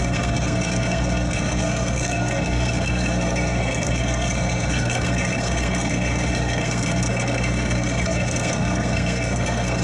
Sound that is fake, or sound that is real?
fake